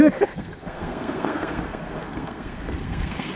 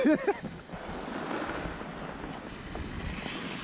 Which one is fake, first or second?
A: first